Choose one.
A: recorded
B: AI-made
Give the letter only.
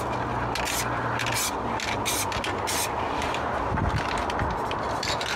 A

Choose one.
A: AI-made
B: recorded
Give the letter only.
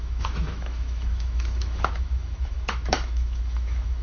A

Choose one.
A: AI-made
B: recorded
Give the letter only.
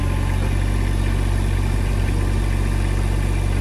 B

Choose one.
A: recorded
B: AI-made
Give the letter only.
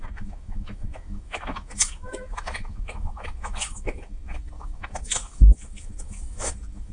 B